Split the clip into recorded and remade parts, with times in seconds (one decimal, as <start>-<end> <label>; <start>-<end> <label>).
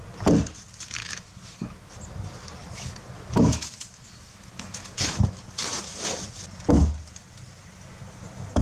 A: 0.0-1.0 recorded; 1.0-1.9 remade; 1.9-2.6 recorded; 2.6-6.0 remade; 6.0-8.6 recorded